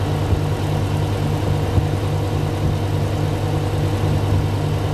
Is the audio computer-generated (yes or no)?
no